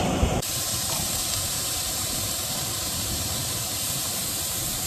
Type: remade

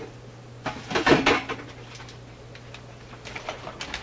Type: recorded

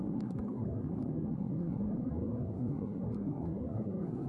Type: remade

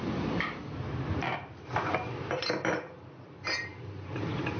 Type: remade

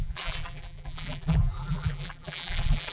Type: remade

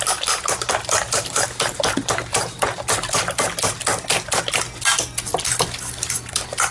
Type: recorded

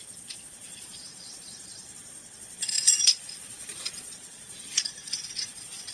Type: remade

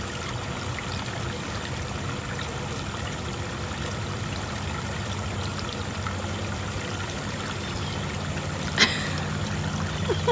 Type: recorded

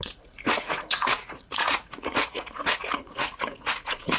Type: remade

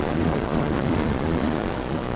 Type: remade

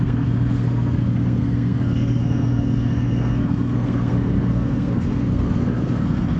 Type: remade